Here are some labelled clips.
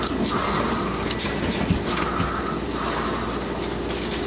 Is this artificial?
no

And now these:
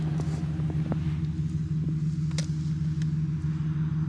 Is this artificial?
no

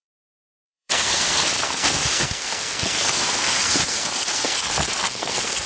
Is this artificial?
yes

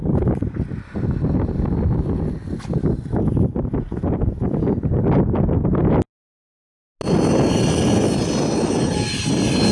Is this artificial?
no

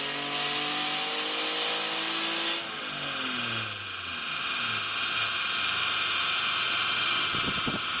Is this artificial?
no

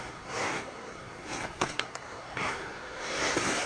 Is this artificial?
yes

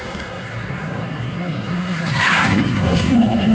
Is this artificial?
yes